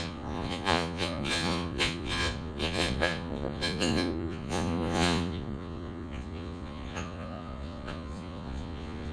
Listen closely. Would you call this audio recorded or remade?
remade